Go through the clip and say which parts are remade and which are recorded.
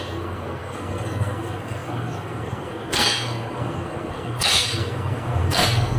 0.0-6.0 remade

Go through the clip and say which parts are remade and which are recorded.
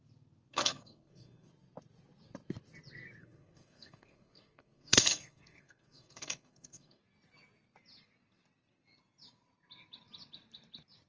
0.0-0.5 recorded; 0.5-1.5 remade; 1.5-3.2 recorded; 3.2-7.0 remade; 7.0-11.1 recorded